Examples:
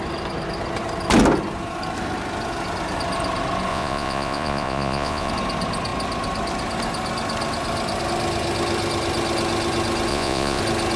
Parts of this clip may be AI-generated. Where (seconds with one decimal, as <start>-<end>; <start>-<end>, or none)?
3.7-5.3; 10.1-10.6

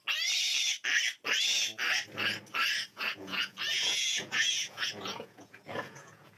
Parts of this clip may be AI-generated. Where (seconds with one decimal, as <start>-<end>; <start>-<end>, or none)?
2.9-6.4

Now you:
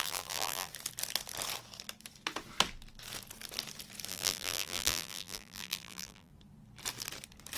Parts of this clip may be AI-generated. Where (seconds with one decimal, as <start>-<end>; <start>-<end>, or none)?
0.0-0.7; 4.1-6.3

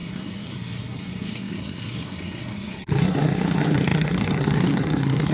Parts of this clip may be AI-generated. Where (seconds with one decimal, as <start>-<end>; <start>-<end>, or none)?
0.0-5.3

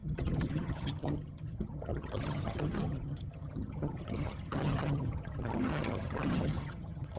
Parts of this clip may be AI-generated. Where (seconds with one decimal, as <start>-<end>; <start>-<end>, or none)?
0.0-7.2

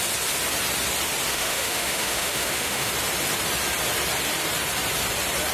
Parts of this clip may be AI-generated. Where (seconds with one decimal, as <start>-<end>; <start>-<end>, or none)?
1.3-2.9